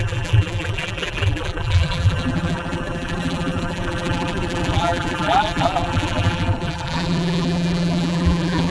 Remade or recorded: remade